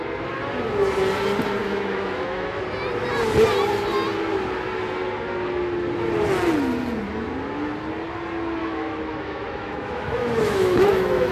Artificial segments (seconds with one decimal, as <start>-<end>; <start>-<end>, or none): 1.6-2.6; 8.6-11.3